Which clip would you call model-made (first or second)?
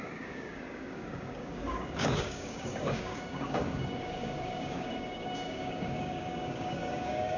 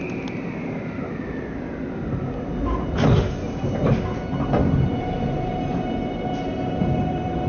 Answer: first